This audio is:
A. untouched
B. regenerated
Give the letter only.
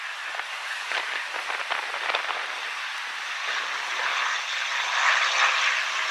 A